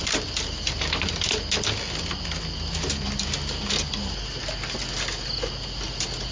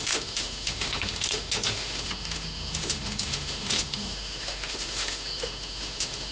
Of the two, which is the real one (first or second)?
first